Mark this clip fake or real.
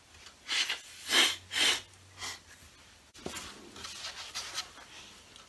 real